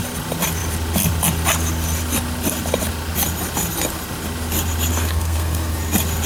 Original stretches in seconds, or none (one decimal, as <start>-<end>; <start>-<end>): 0.0-4.9; 5.7-6.3